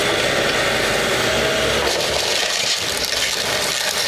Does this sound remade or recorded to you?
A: recorded